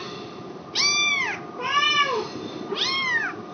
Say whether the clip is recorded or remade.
recorded